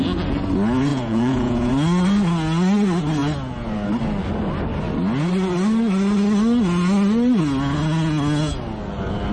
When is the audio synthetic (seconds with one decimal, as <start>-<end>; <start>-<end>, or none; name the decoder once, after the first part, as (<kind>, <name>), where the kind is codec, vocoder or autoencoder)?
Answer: 0.9-1.7 (vocoder, Vocos)